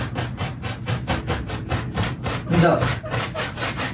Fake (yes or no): no